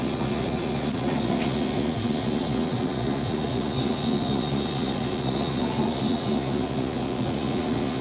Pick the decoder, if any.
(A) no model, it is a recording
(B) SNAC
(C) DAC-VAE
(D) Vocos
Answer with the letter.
D